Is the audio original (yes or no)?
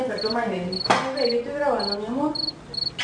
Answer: yes